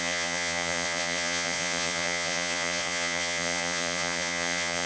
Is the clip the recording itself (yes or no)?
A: no